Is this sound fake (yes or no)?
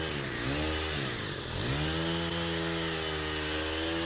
no